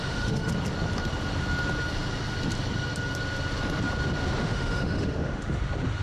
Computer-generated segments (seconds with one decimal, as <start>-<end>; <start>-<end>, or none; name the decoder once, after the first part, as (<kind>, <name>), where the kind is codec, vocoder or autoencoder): 0.0-0.5 (autoencoder, DAC-VAE); 4.4-5.6